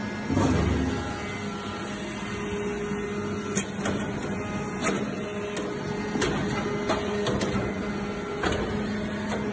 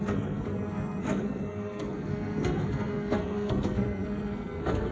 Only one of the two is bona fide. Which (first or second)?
first